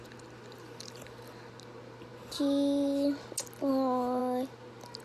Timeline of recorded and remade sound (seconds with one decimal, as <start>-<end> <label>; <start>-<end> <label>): 0.0-5.0 recorded